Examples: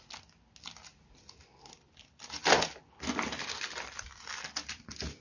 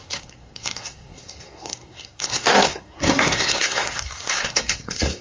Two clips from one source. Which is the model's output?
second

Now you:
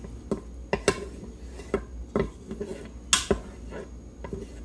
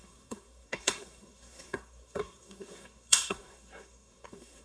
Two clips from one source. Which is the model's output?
second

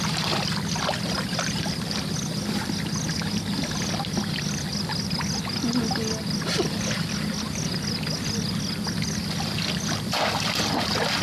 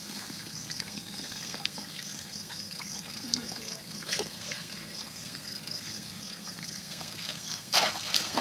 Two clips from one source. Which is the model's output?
second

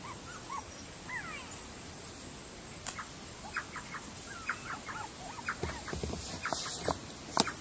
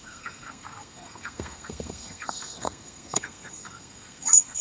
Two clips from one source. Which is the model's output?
second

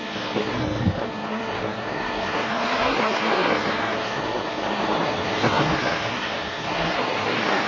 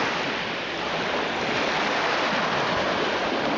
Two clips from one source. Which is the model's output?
first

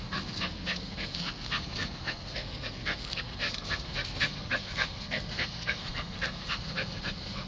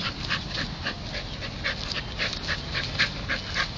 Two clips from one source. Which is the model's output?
first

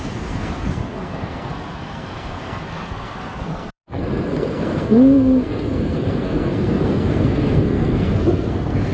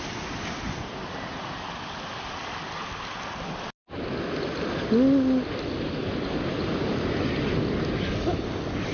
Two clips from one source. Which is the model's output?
first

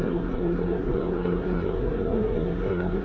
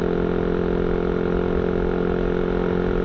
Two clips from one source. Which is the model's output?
first